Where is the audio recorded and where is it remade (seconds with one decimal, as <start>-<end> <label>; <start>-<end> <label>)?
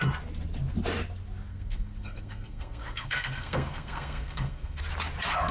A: 0.0-1.5 recorded; 1.5-4.8 remade; 4.8-5.5 recorded